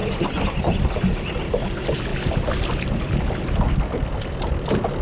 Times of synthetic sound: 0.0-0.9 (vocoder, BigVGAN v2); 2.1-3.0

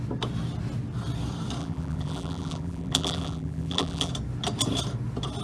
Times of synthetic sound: 1.6-4.1 (vocoder, BigVGAN v2)

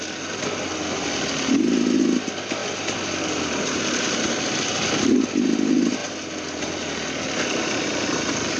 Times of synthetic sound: none

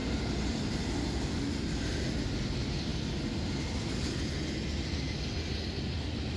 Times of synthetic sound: none

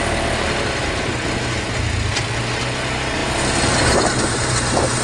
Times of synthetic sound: none

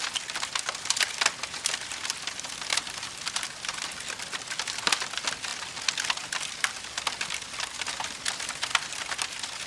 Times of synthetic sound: none

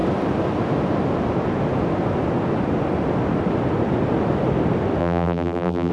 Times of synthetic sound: 5.0-5.9 (vocoder, BigVGAN v2)